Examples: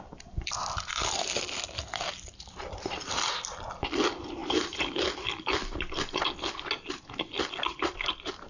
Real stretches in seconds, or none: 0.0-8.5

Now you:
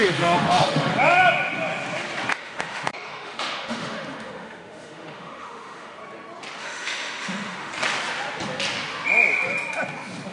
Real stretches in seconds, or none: 0.9-2.3; 6.0-6.6; 7.7-10.3

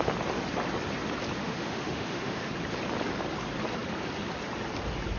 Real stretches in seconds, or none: 0.0-1.4; 2.5-5.2

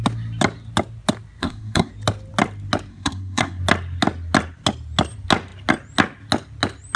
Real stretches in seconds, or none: 0.0-1.4; 1.9-2.9; 3.6-7.0

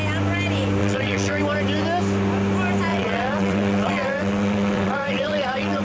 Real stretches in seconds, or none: 0.0-0.8; 1.4-2.9

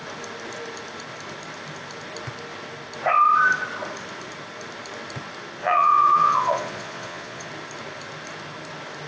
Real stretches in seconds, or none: 0.0-5.6; 7.5-9.1